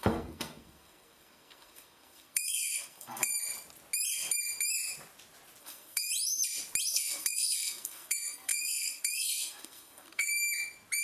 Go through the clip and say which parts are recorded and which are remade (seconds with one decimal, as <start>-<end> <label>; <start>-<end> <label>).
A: 0.0-3.3 remade; 3.3-5.6 recorded; 5.6-6.1 remade; 6.1-6.9 recorded; 6.9-10.3 remade; 10.3-11.0 recorded